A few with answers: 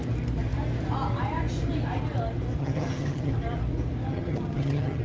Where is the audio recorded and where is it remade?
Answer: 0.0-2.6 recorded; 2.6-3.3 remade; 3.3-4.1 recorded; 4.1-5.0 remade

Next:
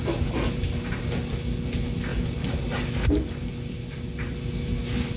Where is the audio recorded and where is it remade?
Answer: 0.0-5.2 recorded

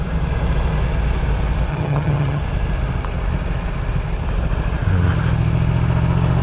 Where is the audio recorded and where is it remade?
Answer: 0.0-1.7 recorded; 1.7-2.4 remade; 2.4-6.4 recorded